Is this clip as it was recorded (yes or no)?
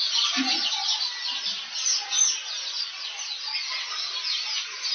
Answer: yes